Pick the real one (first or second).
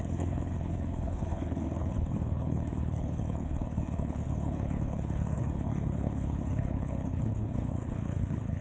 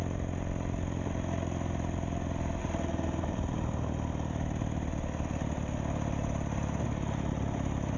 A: second